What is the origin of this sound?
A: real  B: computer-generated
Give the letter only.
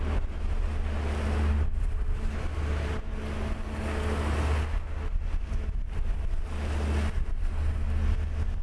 A